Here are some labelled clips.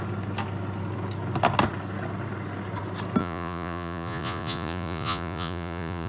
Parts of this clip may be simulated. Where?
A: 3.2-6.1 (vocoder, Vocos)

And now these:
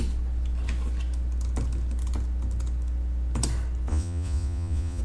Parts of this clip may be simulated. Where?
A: 3.9-5.0 (vocoder, Vocos)

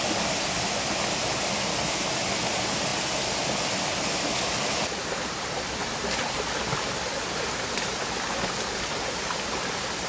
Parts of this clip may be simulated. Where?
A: none

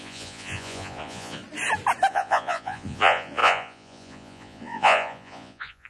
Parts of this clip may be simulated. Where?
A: 0.0-1.4 (vocoder, Vocos); 2.1-5.9

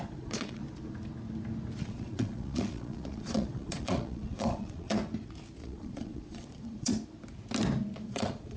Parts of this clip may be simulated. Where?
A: 0.0-0.6 (vocoder, Vocos); 1.8-5.0; 5.6-6.9; 8.0-8.6

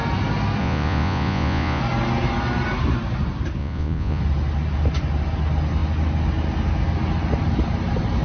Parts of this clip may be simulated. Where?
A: 0.6-1.8 (vocoder, Vocos); 3.6-4.2

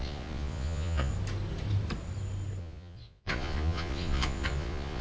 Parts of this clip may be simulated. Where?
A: 0.0-1.1 (vocoder, Vocos); 2.6-5.0

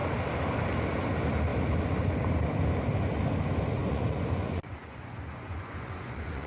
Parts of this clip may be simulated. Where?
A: 3.8-6.5 (vocoder, Vocos)